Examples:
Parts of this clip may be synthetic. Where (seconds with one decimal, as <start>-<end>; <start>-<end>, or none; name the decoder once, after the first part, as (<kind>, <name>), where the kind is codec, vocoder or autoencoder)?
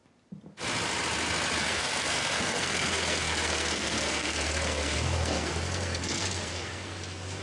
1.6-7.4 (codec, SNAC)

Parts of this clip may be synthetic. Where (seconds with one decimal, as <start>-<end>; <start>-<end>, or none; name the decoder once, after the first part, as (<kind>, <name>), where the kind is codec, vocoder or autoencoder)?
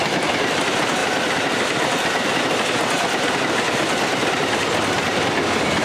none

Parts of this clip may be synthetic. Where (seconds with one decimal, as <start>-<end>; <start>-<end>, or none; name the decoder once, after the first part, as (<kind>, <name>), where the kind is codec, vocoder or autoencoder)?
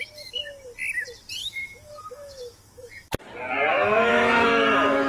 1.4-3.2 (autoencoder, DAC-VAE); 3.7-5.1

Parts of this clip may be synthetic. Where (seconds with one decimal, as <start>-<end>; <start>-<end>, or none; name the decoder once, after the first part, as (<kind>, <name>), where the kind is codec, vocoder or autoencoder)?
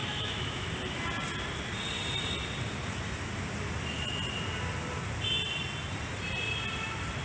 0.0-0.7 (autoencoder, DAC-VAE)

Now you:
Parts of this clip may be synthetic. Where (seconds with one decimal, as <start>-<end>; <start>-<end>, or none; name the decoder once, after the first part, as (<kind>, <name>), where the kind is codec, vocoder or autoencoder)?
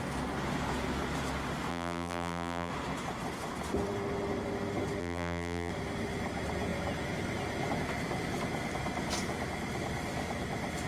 1.7-2.7 (vocoder, BigVGAN v2); 5.0-5.7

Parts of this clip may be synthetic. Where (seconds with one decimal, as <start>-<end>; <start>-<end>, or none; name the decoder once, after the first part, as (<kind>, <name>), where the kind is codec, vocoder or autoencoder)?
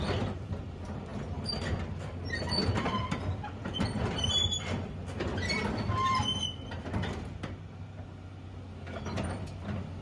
1.1-3.1 (vocoder, BigVGAN v2); 3.6-4.3